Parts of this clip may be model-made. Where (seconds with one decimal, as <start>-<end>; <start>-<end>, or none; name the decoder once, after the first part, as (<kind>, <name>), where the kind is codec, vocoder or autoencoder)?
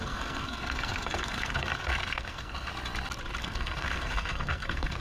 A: 0.0-2.7 (codec, SNAC); 3.4-5.0